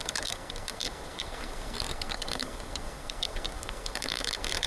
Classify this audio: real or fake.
fake